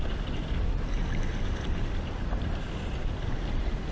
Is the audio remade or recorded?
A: recorded